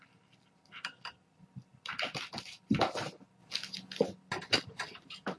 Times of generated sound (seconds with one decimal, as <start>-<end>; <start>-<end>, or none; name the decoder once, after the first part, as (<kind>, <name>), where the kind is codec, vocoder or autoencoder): none